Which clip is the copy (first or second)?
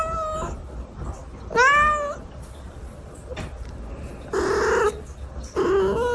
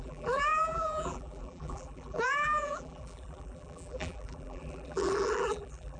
second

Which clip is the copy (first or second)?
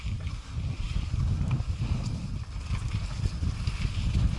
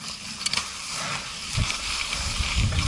second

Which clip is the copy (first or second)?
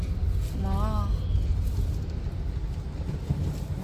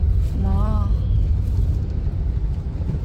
second